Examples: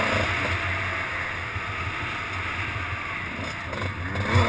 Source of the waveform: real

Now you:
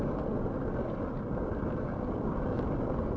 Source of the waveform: real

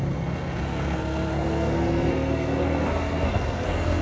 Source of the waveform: fake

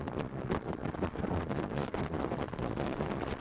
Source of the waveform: fake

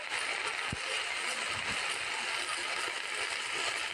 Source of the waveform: real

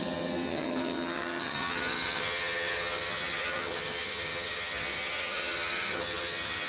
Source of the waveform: fake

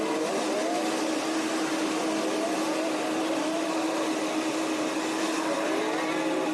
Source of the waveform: real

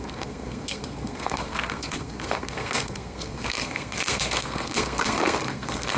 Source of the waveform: fake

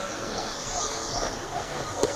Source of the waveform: fake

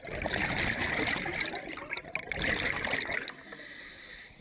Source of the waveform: real